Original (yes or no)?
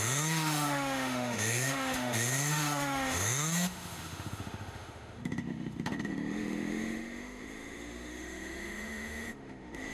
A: no